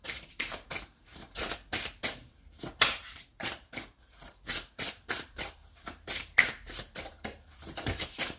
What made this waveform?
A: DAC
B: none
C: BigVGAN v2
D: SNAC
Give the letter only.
C